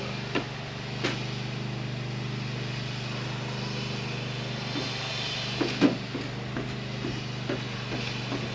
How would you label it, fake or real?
real